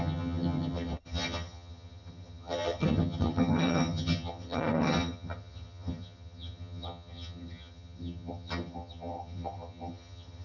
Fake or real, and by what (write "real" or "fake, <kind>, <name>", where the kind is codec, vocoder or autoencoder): fake, vocoder, HiFi-GAN